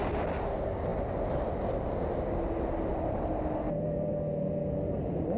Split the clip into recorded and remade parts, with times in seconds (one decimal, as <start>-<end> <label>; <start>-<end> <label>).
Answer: 0.0-5.4 recorded